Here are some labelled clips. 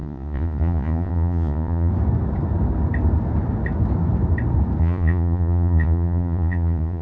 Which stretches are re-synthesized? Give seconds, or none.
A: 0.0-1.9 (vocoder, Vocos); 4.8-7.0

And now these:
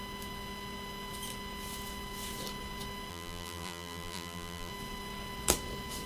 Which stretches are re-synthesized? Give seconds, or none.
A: 3.1-4.7 (vocoder, BigVGAN v2)